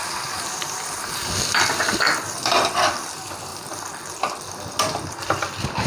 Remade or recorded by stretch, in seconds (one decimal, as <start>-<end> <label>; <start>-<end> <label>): 0.0-5.9 remade